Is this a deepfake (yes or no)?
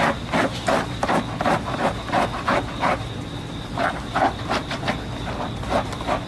no